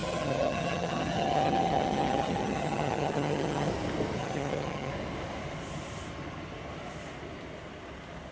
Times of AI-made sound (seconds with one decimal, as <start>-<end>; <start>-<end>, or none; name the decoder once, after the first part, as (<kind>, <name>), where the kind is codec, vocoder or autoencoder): 0.0-3.7 (vocoder, HiFi-GAN); 4.2-4.9